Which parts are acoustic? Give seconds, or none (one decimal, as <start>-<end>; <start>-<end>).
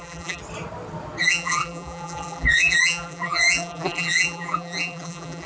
0.4-1.2